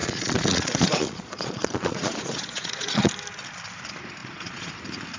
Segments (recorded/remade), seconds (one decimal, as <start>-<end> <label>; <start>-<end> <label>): 0.0-3.1 remade; 3.1-4.2 recorded; 4.2-4.7 remade; 4.7-5.2 recorded